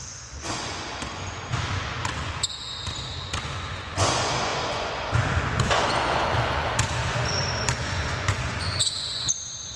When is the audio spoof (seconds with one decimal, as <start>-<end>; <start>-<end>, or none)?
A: 0.0-9.8